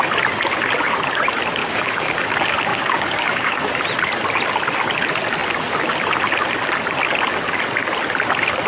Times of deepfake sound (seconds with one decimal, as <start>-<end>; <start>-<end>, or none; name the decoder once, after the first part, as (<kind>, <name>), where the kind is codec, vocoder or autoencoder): 1.6-2.3 (codec, DAC); 2.7-3.7